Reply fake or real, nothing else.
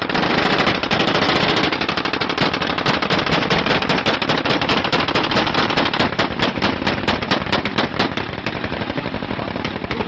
fake